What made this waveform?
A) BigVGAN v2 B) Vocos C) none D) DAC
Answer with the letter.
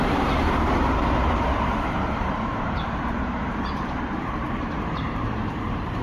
A